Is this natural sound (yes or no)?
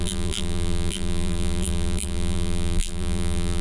no